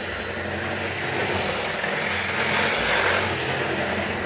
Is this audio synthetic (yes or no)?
no